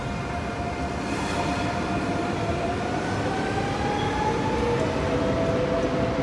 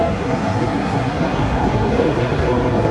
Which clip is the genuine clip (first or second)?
first